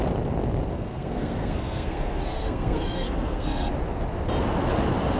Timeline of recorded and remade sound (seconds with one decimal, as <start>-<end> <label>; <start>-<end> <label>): 0.0-0.7 recorded; 0.7-3.7 remade; 3.7-5.2 recorded